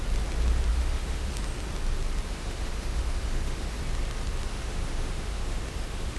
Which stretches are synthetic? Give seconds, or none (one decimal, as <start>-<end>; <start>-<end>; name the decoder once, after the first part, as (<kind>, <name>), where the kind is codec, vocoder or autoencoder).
0.7-1.3 (autoencoder, DAC-VAE); 2.3-3.8; 4.5-6.2